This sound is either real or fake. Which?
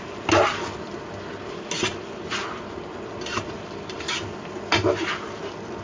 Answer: real